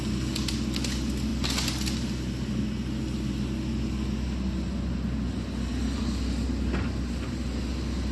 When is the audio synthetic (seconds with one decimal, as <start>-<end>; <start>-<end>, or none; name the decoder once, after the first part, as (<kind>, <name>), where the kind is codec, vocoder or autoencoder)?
none